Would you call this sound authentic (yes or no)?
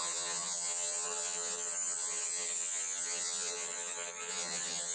no